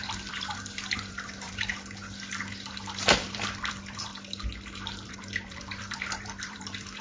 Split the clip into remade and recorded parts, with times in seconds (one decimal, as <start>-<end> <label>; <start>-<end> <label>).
0.0-1.7 remade; 1.7-3.1 recorded; 3.1-4.1 remade; 4.1-5.1 recorded; 5.1-7.0 remade